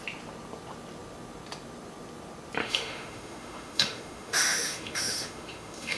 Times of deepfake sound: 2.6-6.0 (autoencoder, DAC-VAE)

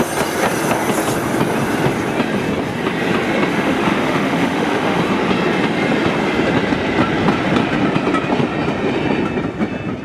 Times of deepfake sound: 3.5-5.0 (autoencoder, DAC-VAE)

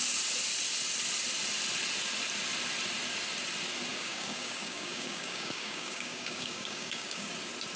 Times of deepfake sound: 3.9-7.3 (codec, DAC)

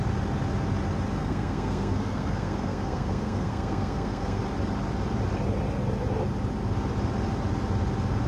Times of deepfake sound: 1.2-4.4 (codec, SNAC)

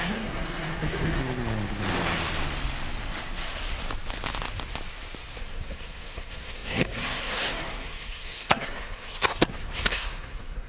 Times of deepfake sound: 0.0-1.2 (codec, SNAC); 5.4-10.7

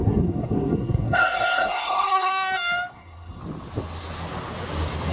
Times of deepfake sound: 0.0-2.3 (codec, SNAC); 2.9-3.4